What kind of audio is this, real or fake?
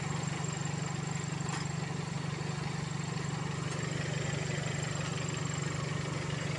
real